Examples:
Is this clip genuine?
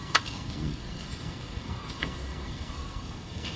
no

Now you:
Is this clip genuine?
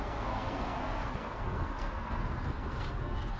no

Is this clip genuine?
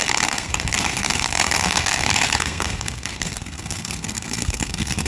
no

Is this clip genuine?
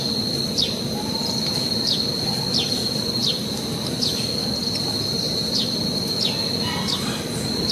yes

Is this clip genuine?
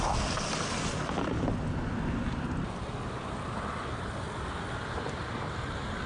yes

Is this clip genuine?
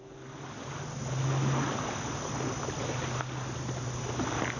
yes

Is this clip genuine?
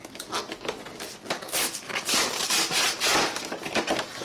yes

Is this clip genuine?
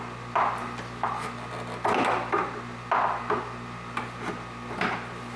yes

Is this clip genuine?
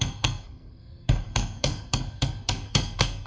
no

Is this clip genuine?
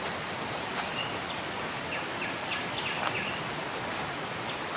yes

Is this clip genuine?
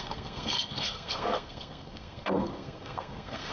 no